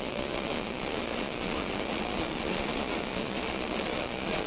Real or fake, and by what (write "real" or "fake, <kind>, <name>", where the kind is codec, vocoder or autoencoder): fake, vocoder, Vocos